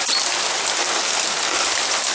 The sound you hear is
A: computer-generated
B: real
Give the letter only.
B